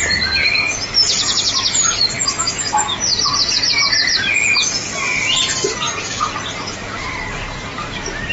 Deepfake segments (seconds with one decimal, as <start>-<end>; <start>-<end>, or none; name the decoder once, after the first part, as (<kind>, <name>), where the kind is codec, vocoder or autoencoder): none